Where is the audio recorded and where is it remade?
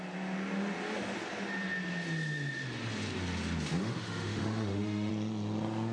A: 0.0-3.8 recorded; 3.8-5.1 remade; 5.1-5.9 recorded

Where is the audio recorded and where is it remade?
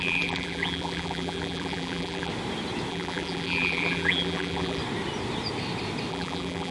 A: 0.0-2.3 remade; 2.3-2.9 recorded; 2.9-4.8 remade; 4.8-6.1 recorded; 6.1-6.7 remade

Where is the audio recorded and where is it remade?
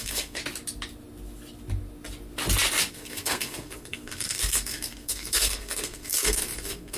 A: 0.0-0.4 remade; 0.4-2.9 recorded; 2.9-7.0 remade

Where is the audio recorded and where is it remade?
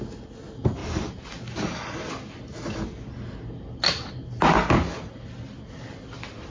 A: 0.0-6.5 recorded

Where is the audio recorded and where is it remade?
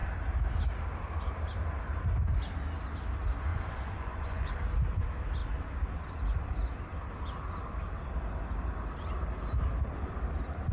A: 0.0-3.5 recorded; 3.5-4.5 remade; 4.5-10.7 recorded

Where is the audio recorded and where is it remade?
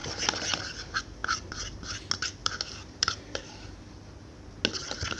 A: 0.0-1.2 recorded; 1.2-1.9 remade; 1.9-2.4 recorded; 2.4-3.8 remade; 3.8-5.2 recorded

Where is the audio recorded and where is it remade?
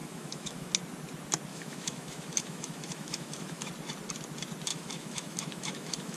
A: 0.0-0.7 remade; 0.7-1.5 recorded; 1.5-3.7 remade; 3.7-4.7 recorded; 4.7-6.2 remade